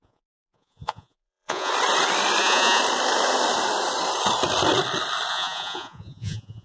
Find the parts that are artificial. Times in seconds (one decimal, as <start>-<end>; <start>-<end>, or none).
0.0-1.7; 2.4-2.8; 5.3-6.6